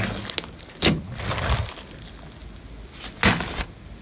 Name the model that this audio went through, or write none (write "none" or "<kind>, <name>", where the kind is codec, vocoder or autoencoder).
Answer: none